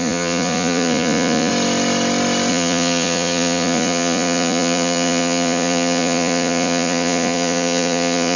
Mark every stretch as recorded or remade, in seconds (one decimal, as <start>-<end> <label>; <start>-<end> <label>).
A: 0.0-1.5 remade; 1.5-2.5 recorded; 2.5-8.4 remade